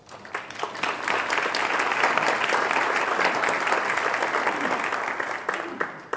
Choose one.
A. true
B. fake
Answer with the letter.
A